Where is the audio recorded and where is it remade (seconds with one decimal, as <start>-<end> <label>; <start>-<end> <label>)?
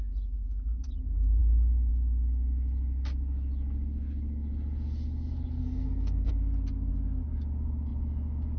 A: 0.0-5.6 recorded; 5.6-6.3 remade; 6.3-8.6 recorded